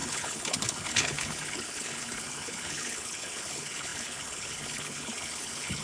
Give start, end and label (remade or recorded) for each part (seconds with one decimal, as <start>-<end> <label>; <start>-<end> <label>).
0.0-5.8 remade